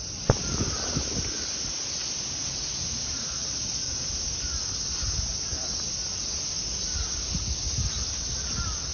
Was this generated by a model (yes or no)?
no